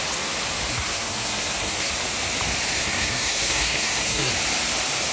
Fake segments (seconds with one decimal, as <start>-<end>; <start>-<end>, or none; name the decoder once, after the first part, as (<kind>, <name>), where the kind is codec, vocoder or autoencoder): 0.7-1.9 (codec, SNAC); 2.8-4.3